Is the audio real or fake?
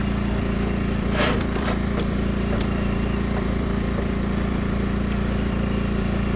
fake